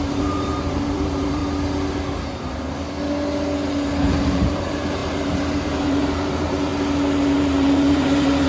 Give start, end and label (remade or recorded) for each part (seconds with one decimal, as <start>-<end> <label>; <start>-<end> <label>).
0.0-1.4 remade; 1.4-4.1 recorded; 4.1-6.7 remade; 6.7-7.3 recorded; 7.3-8.5 remade